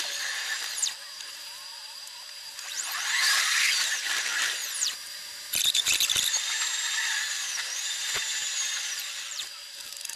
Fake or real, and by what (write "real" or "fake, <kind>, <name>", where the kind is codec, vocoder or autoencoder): fake, vocoder, BigVGAN v2